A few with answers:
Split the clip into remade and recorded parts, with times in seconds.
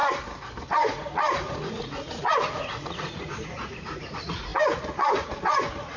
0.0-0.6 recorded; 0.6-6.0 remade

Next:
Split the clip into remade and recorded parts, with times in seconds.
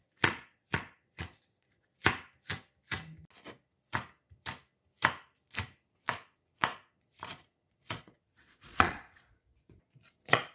0.0-1.9 remade; 1.9-5.9 recorded; 5.9-10.5 remade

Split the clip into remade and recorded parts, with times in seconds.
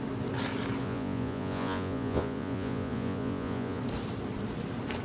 0.0-0.8 recorded; 0.8-3.8 remade; 3.8-5.0 recorded